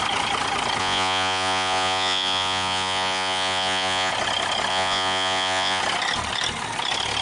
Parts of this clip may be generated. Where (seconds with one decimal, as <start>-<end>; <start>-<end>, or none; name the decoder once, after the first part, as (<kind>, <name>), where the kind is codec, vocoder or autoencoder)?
0.8-4.1 (vocoder, Vocos); 4.7-5.8